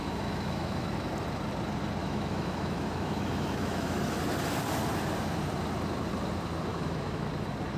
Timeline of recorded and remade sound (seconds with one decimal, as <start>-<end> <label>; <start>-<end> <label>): 0.0-0.9 remade; 0.9-2.0 recorded; 2.0-4.0 remade; 4.0-6.7 recorded; 6.7-7.3 remade; 7.3-7.8 recorded